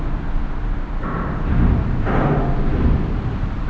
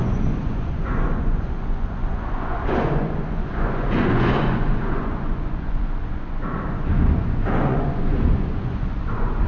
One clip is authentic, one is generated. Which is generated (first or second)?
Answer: second